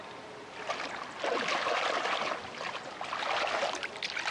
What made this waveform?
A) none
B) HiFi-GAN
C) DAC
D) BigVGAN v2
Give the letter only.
A